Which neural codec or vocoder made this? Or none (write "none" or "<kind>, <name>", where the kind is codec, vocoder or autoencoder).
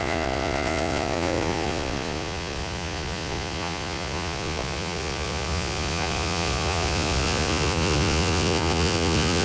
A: vocoder, Vocos